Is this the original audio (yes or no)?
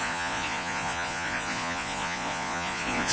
no